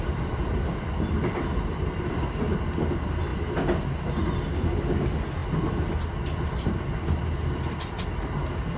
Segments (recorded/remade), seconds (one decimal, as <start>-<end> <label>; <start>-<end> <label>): 0.0-8.8 recorded